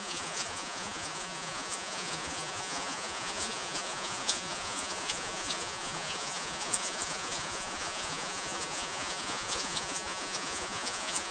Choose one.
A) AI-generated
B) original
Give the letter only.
A